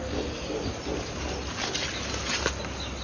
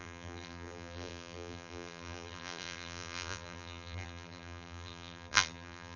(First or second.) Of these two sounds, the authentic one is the first